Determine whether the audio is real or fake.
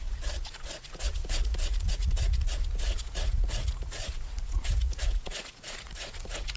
fake